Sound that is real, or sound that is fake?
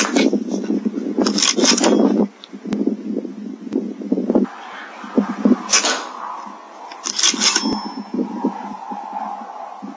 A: real